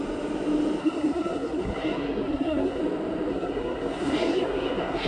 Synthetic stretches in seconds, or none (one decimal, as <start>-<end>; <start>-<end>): 0.8-2.8; 3.3-5.1